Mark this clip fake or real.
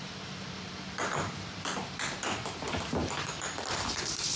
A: fake